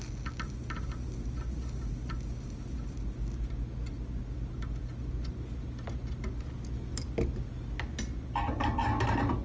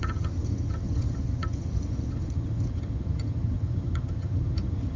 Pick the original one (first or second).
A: first